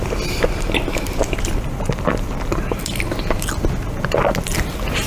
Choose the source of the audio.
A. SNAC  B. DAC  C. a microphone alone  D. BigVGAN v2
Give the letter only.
C